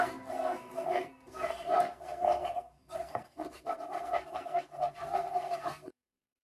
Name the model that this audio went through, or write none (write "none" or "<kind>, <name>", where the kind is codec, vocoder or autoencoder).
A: codec, SNAC